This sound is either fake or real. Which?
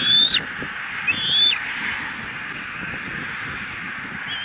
real